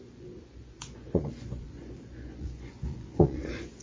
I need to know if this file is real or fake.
fake